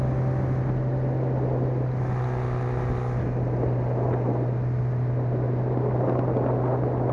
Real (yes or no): yes